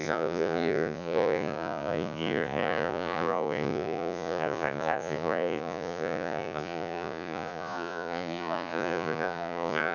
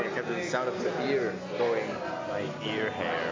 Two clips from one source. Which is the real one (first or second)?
second